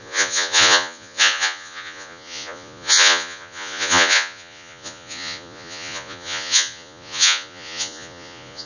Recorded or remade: remade